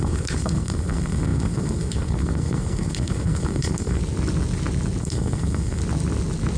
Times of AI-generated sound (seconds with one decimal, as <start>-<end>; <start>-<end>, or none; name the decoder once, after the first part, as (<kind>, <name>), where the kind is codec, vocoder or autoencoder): 0.0-4.0 (codec, SNAC); 5.0-5.8